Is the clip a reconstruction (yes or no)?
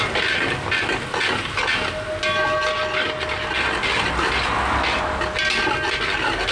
no